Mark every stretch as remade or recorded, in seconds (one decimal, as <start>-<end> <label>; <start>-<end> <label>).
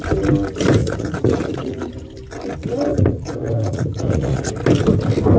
0.0-0.8 recorded; 0.8-1.9 remade; 1.9-2.9 recorded; 2.9-4.5 remade; 4.5-5.4 recorded